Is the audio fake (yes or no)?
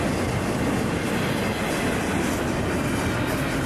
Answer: no